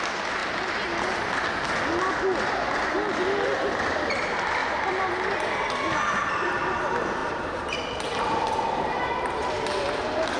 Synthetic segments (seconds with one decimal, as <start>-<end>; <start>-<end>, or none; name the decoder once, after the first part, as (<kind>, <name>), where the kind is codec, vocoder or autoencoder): 7.2-7.9 (vocoder, BigVGAN v2)